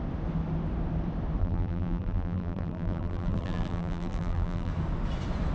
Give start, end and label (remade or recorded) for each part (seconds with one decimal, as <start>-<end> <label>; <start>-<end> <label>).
0.0-1.4 recorded; 1.4-4.7 remade; 4.7-5.5 recorded